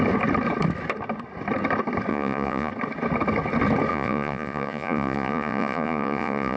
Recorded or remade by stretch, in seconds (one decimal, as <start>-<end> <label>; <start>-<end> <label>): 0.0-2.1 recorded; 2.1-2.7 remade; 2.7-3.9 recorded; 3.9-6.6 remade